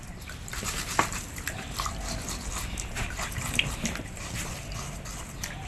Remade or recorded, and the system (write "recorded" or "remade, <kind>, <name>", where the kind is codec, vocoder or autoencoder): recorded